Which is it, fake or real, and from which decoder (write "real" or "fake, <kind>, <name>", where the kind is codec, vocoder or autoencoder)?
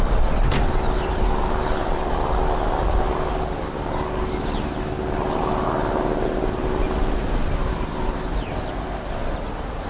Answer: real